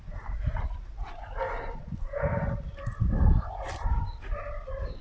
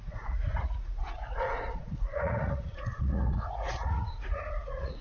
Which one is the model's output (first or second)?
second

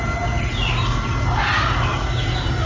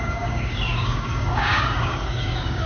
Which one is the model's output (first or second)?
second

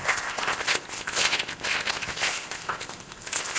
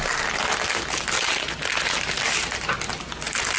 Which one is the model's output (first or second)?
first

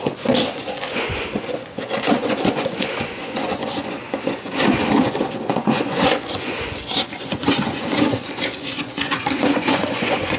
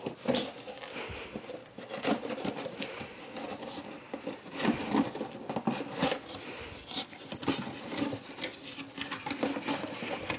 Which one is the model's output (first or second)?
first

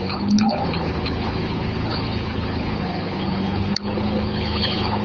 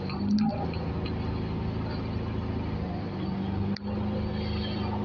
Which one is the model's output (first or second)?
first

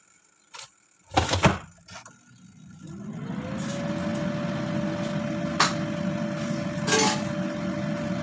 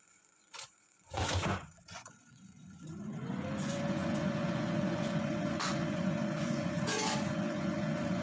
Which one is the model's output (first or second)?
second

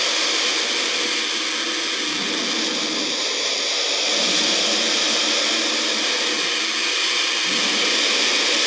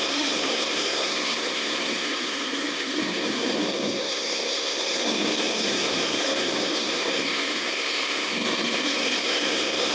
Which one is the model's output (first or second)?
second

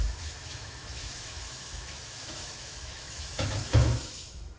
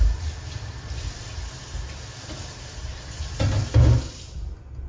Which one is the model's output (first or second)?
first